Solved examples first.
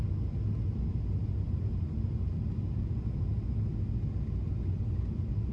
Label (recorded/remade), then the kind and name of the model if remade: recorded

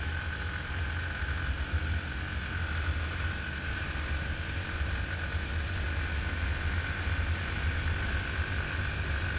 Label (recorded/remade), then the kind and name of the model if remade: recorded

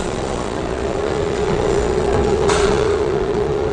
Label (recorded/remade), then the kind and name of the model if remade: remade, vocoder, Vocos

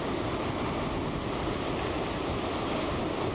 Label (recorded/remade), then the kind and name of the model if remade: recorded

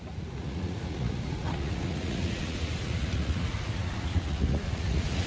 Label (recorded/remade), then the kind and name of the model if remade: remade, vocoder, Vocos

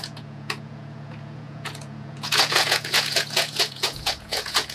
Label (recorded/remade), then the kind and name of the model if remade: remade, vocoder, Vocos